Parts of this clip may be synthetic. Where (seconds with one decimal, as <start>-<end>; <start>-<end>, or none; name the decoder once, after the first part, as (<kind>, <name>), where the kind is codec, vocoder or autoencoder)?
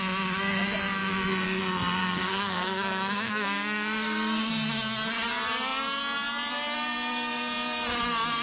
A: 2.0-4.5 (codec, DAC)